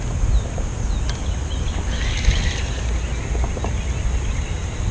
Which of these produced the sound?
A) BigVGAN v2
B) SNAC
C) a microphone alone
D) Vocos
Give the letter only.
C